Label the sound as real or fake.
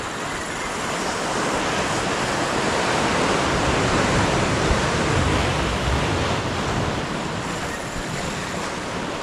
real